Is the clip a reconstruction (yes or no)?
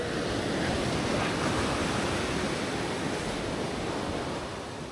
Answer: no